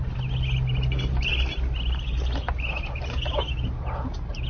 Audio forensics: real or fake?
real